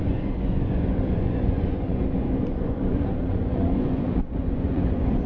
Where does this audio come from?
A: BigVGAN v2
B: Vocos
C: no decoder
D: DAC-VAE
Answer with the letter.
B